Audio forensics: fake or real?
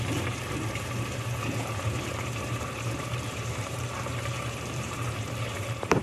fake